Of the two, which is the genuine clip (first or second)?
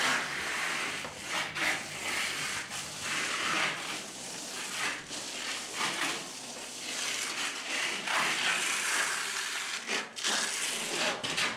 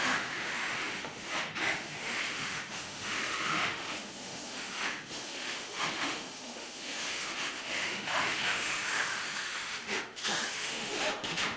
first